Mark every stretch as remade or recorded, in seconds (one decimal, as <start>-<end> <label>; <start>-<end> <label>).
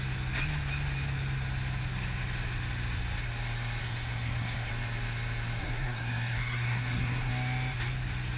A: 0.0-3.8 recorded; 3.8-4.7 remade; 4.7-5.6 recorded; 5.6-7.3 remade; 7.3-8.4 recorded